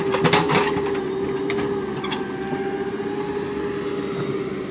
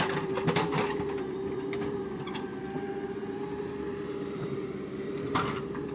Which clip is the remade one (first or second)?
second